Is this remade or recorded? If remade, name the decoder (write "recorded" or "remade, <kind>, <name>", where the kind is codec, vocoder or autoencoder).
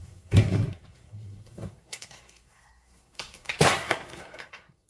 remade, codec, SNAC